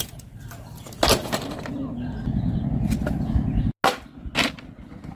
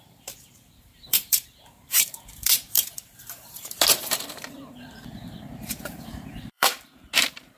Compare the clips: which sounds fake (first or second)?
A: second